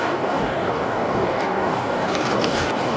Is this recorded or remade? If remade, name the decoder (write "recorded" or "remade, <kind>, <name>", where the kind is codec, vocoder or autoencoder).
remade, codec, DAC